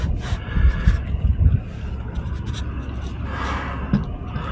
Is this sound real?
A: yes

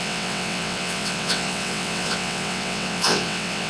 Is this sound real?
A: no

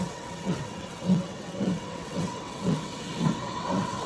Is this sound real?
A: no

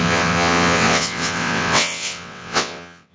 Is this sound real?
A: no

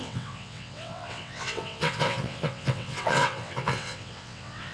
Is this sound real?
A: no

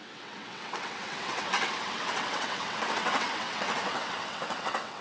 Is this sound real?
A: no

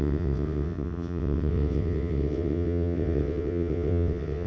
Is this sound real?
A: no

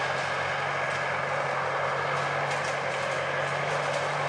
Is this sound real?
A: yes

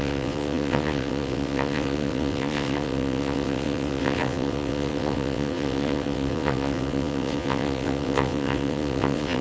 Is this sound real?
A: no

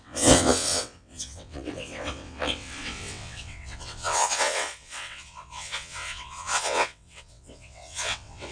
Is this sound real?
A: no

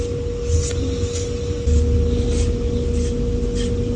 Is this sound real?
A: yes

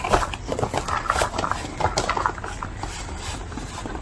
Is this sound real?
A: yes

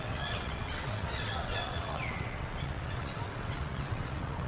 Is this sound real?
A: no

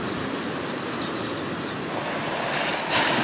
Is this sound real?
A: yes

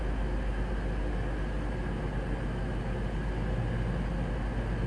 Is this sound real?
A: yes